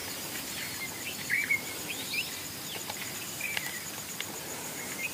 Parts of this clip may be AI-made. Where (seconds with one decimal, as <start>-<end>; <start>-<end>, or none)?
0.0-3.1